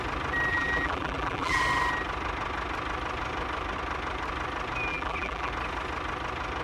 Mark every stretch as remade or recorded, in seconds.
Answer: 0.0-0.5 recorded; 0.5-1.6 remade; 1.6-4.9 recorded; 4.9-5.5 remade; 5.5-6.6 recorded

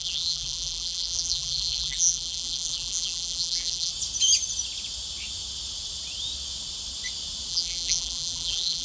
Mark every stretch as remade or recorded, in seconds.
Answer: 0.0-3.9 remade; 3.9-7.5 recorded; 7.5-8.8 remade

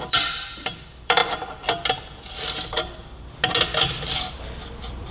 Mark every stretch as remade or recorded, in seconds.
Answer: 0.0-1.2 remade; 1.2-2.3 recorded; 2.3-3.0 remade; 3.0-3.9 recorded; 3.9-5.1 remade

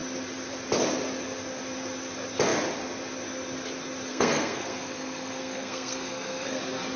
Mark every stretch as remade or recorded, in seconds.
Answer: 0.0-4.1 recorded; 4.1-6.6 remade; 6.6-7.0 recorded

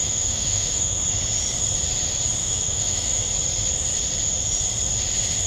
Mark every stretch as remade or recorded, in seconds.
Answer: 0.0-1.0 remade; 1.0-2.4 recorded; 2.4-3.2 remade; 3.2-5.5 recorded

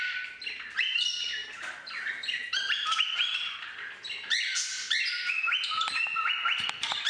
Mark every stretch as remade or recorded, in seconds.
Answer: 0.0-7.1 recorded